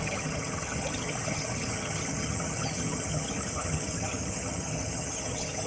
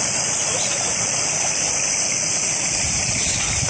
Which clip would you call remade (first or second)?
first